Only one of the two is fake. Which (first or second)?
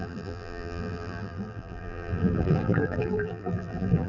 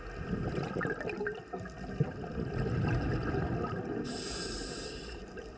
first